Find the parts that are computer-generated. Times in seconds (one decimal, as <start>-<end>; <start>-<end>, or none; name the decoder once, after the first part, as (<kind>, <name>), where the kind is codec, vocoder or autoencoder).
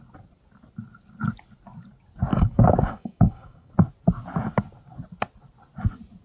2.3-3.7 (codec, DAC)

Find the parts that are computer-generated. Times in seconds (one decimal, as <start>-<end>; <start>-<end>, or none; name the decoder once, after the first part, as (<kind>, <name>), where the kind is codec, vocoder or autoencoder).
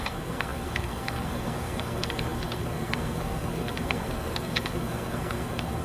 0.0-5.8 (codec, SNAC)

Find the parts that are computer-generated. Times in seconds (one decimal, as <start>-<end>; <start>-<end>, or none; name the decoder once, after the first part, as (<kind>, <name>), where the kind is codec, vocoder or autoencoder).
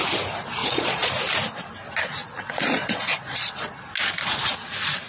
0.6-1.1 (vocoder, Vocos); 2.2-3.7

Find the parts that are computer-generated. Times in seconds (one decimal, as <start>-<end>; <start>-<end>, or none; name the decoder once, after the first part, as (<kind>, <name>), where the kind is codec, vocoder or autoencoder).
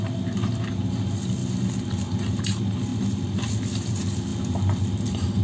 1.4-2.4 (vocoder, BigVGAN v2)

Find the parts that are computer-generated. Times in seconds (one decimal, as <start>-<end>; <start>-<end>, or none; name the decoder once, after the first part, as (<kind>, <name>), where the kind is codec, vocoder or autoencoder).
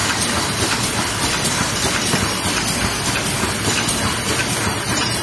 0.0-3.1 (vocoder, BigVGAN v2)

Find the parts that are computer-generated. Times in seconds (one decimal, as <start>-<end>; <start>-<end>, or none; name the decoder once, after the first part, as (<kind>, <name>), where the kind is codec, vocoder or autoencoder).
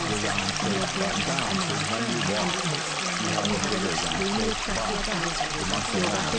none